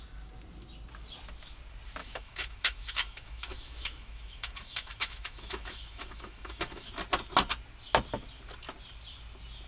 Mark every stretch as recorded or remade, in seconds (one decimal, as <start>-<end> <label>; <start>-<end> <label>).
0.0-2.0 recorded; 2.0-6.9 remade; 6.9-9.7 recorded